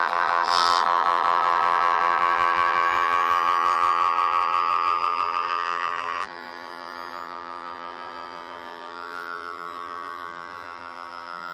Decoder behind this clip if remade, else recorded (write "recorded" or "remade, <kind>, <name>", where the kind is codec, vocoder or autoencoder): remade, vocoder, BigVGAN v2